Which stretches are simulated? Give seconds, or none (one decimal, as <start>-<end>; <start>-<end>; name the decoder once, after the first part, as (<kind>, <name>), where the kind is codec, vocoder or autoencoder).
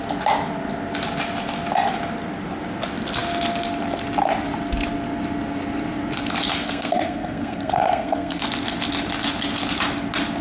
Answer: 6.6-8.4 (codec, SNAC)